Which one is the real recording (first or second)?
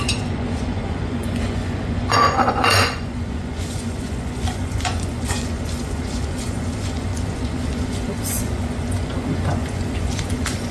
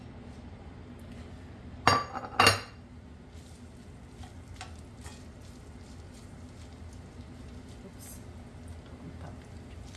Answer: second